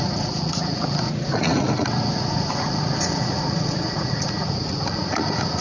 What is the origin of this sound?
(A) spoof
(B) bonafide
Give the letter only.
A